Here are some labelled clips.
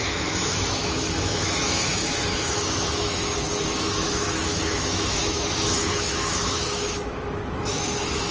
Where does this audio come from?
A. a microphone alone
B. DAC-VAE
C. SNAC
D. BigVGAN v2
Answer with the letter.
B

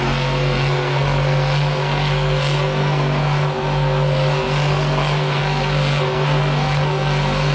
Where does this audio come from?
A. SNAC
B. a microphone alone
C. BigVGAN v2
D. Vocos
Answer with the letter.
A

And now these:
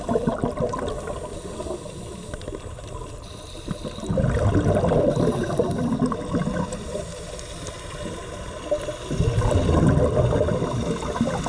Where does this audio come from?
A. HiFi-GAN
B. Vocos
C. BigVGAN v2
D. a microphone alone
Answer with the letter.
D